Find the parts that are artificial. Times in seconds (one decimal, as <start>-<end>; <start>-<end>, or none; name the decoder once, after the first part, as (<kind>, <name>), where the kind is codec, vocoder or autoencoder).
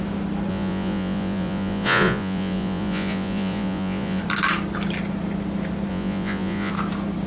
0.5-4.2 (vocoder, Vocos); 5.9-6.7